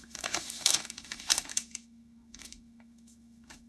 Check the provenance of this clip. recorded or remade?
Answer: remade